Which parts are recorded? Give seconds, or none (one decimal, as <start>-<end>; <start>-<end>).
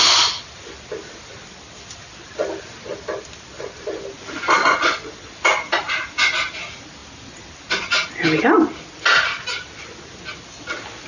0.0-4.6; 5.3-11.1